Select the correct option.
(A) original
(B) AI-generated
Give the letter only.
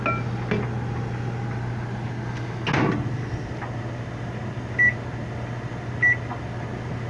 A